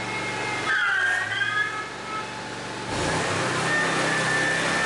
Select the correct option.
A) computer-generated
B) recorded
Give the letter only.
B